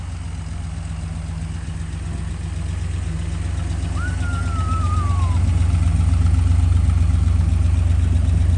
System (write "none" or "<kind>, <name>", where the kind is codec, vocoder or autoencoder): none